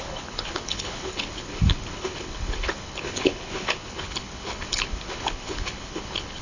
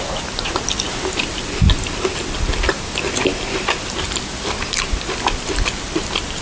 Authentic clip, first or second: second